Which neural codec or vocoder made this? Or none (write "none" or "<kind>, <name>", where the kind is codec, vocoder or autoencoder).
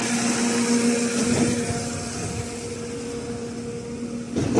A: none